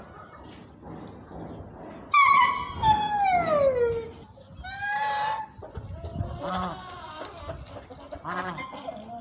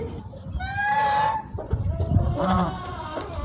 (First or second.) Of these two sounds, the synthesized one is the second